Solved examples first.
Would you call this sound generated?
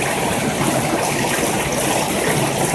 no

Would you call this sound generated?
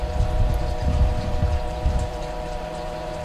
yes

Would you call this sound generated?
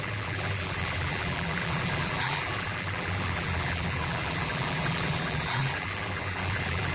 yes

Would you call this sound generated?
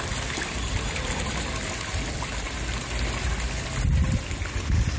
no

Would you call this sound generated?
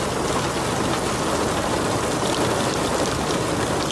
no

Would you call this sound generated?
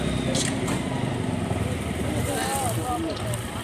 yes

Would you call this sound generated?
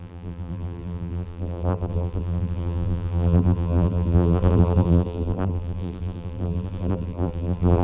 yes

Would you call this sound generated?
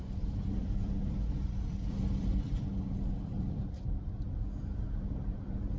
yes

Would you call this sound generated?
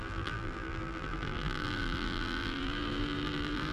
yes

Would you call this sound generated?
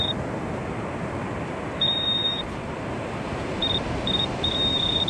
yes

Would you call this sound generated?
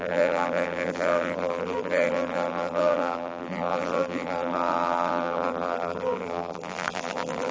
yes